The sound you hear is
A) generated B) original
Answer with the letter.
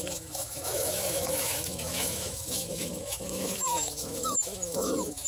A